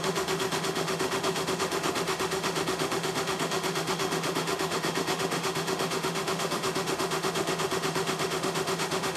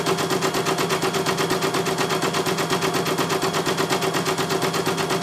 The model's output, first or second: first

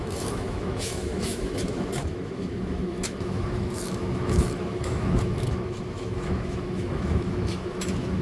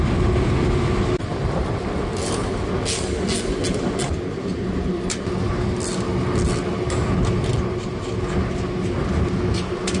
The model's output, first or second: first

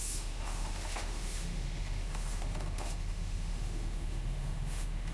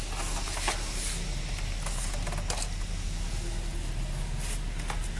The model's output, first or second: first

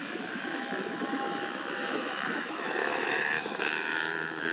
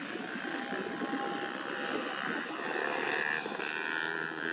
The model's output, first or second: first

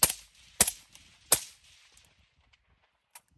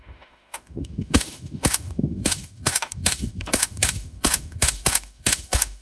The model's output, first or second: second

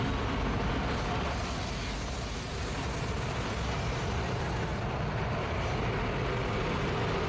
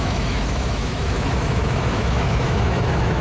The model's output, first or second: second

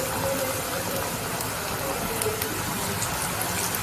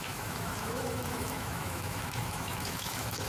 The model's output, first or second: second